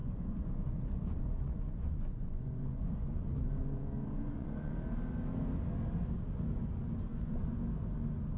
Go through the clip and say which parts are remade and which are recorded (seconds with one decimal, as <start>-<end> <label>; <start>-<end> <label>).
0.0-4.7 remade; 4.7-7.1 recorded; 7.1-7.6 remade; 7.6-8.4 recorded

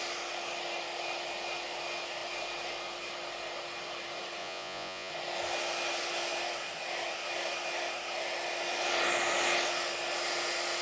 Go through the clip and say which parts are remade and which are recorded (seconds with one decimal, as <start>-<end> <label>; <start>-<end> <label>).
0.0-4.4 recorded; 4.4-5.1 remade; 5.1-10.8 recorded

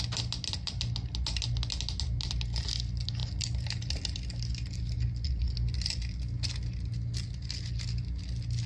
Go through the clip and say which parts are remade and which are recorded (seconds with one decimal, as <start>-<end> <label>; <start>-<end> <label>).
0.0-8.7 recorded

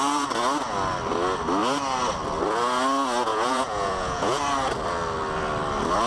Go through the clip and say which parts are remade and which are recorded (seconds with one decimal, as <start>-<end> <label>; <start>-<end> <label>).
0.0-3.3 recorded; 3.3-4.4 remade; 4.4-6.1 recorded